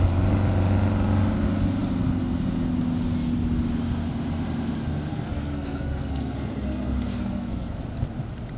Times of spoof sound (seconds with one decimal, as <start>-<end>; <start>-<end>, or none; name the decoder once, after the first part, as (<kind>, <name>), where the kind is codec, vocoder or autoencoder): 5.1-7.8 (codec, SNAC)